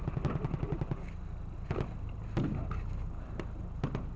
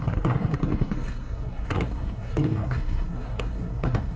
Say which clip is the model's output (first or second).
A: second